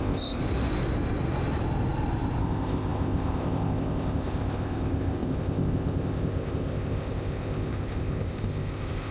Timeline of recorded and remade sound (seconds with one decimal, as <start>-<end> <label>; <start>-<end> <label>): 0.0-0.4 remade; 0.4-2.4 recorded; 2.4-9.1 remade